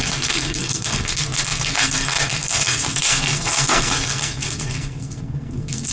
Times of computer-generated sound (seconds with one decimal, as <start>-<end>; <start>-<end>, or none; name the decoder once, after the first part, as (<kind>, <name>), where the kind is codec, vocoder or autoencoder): 0.0-5.9 (codec, SNAC)